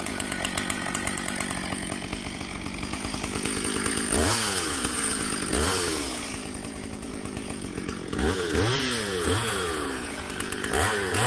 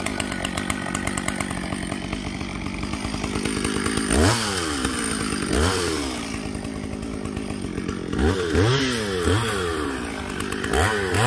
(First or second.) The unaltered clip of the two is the second